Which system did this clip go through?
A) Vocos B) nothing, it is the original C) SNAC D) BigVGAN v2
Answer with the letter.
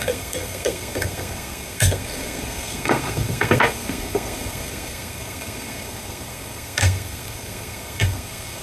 C